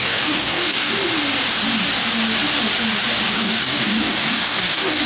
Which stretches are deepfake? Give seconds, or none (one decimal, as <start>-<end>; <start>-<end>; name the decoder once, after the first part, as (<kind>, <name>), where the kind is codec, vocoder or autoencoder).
0.0-1.0 (codec, DAC); 3.3-5.1

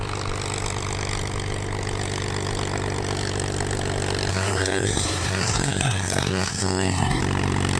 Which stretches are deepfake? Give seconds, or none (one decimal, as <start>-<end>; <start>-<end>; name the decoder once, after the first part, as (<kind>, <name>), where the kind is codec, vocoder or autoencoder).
4.3-7.2 (codec, SNAC)

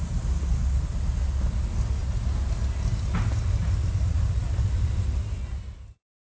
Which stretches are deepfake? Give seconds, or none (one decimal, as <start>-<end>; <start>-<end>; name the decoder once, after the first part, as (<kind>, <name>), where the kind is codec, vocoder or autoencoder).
none

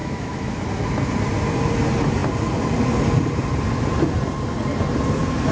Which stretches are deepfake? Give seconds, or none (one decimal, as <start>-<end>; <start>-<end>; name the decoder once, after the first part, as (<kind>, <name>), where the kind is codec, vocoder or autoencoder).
0.0-0.5 (autoencoder, DAC-VAE)

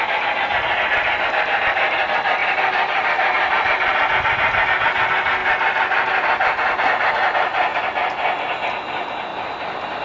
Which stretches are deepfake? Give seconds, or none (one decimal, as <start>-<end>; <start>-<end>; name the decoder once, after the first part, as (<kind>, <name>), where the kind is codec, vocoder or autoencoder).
2.4-4.7 (vocoder, BigVGAN v2); 5.4-7.1; 7.7-8.2; 9.3-10.0

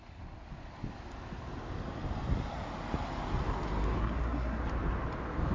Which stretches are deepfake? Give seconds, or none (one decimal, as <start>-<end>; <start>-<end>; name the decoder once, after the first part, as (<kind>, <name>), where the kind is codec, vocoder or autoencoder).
4.0-4.6 (codec, SNAC)

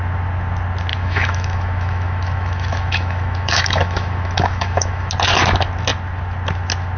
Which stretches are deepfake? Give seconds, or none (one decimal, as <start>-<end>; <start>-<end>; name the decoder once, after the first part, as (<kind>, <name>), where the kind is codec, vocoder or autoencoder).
0.9-5.1 (autoencoder, DAC-VAE)

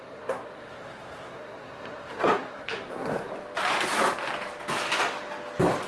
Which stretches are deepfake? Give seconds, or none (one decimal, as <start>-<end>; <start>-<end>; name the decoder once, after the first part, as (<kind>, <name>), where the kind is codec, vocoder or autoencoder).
0.0-3.3 (codec, SNAC)